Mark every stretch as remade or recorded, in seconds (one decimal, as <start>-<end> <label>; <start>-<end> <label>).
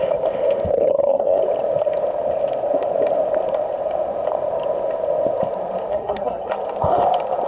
0.0-0.9 recorded; 0.9-1.4 remade; 1.4-5.9 recorded; 5.9-6.5 remade; 6.5-7.5 recorded